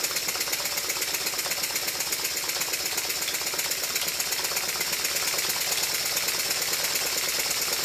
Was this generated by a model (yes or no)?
no